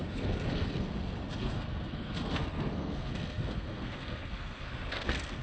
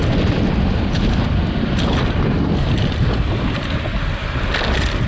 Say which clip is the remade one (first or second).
first